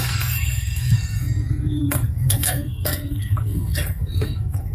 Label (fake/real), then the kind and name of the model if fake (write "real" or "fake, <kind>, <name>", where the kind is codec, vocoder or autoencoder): fake, codec, SNAC